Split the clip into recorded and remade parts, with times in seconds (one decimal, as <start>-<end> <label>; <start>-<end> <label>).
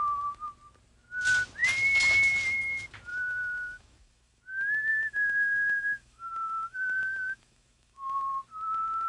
0.0-3.1 recorded; 3.1-4.4 remade; 4.4-4.9 recorded; 4.9-8.2 remade; 8.2-9.1 recorded